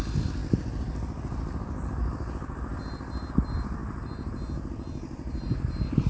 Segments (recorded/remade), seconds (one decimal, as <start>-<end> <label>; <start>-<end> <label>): 0.0-6.1 recorded

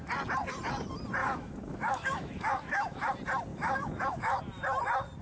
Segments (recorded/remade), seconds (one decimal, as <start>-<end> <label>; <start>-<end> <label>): 0.0-1.2 recorded; 1.2-3.1 remade; 3.1-3.5 recorded; 3.5-4.4 remade; 4.4-5.2 recorded

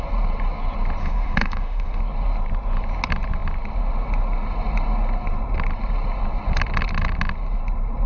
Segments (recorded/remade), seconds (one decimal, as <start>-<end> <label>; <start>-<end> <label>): 0.0-1.0 recorded; 1.0-2.0 remade; 2.0-8.1 recorded

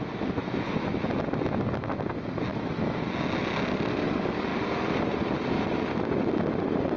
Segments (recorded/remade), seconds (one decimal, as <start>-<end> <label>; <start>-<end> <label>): 0.0-0.4 recorded; 0.4-1.1 remade; 1.1-2.5 recorded; 2.5-3.0 remade; 3.0-7.0 recorded

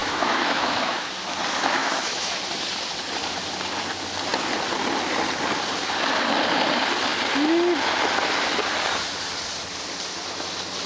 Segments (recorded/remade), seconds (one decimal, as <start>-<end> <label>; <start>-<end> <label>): 0.0-1.1 remade; 1.1-1.8 recorded; 1.8-2.4 remade; 2.4-10.9 recorded

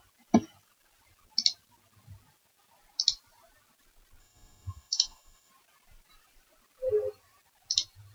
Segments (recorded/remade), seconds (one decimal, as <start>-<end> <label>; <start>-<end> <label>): 0.0-4.2 recorded; 4.2-5.5 remade; 5.5-8.1 recorded

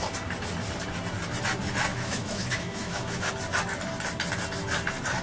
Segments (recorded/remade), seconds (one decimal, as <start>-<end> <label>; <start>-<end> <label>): 0.0-1.9 recorded; 1.9-3.3 remade; 3.3-5.2 recorded